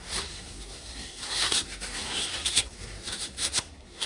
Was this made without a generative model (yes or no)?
no